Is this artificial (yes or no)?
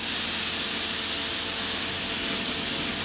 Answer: no